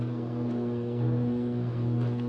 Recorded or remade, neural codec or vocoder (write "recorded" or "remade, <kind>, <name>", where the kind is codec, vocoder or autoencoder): remade, codec, SNAC